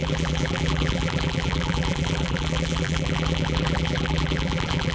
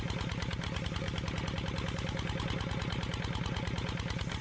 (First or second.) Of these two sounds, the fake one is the first